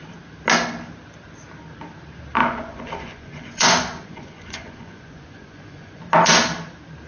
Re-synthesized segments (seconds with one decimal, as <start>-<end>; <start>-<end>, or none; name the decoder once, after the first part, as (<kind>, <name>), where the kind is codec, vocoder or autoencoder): 2.4-6.0 (vocoder, Vocos)